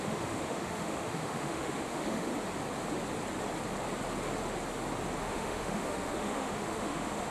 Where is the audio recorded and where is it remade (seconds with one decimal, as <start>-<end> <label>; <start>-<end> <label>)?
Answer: 0.0-2.3 remade; 2.3-5.2 recorded; 5.2-7.3 remade